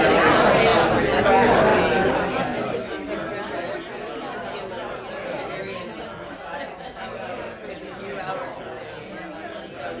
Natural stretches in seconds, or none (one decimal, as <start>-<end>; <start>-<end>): 0.0-10.0